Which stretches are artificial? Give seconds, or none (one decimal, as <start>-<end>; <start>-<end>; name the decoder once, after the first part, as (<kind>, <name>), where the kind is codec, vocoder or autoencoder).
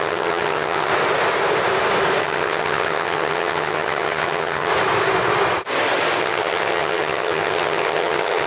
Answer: 0.0-0.9 (vocoder, HiFi-GAN); 2.2-4.7; 6.2-8.5